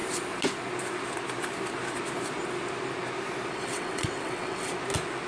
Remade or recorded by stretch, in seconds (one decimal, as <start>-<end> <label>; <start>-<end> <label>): 0.0-3.5 recorded; 3.5-4.7 remade; 4.7-5.3 recorded